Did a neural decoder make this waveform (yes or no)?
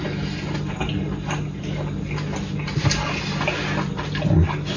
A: no